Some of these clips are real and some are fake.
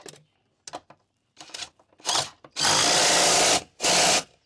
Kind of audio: real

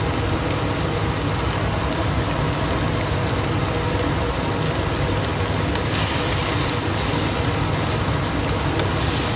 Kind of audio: real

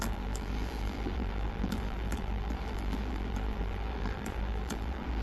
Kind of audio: fake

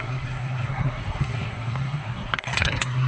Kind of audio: fake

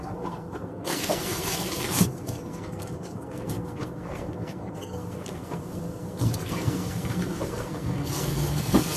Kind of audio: fake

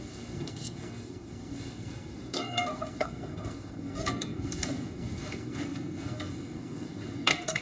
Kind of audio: fake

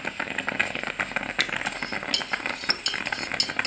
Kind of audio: real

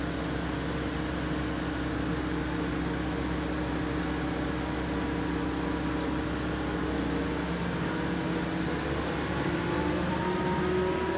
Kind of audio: real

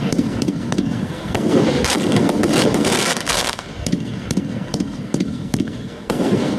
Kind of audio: fake